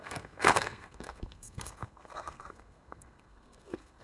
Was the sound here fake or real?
fake